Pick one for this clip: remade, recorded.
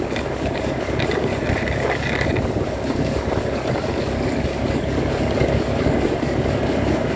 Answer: remade